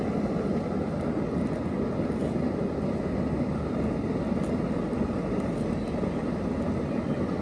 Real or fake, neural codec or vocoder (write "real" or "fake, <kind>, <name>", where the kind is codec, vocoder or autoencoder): real